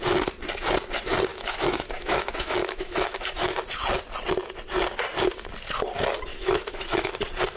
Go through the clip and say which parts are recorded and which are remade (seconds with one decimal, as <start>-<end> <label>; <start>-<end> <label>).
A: 0.0-1.3 recorded; 1.3-3.5 remade; 3.5-6.3 recorded; 6.3-7.1 remade; 7.1-7.6 recorded